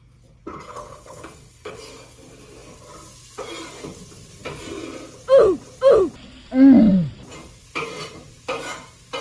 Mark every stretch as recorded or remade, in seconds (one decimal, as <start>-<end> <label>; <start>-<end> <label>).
0.0-0.5 recorded; 0.5-1.8 remade; 1.8-9.2 recorded